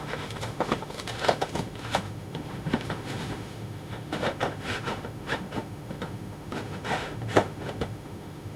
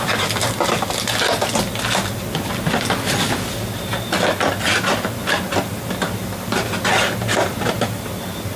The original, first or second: second